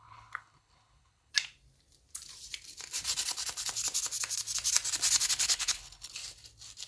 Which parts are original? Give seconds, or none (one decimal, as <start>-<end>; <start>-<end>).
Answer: 1.3-5.2; 6.2-6.9